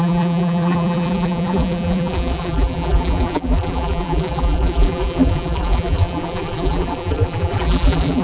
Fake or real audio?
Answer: fake